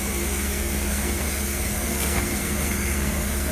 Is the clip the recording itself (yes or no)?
no